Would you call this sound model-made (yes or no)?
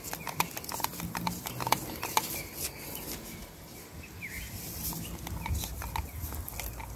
no